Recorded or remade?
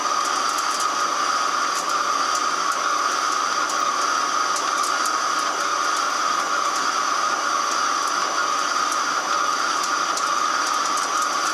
recorded